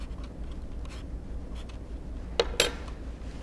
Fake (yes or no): no